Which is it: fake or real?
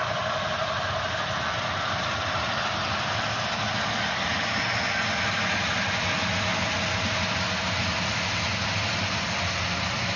real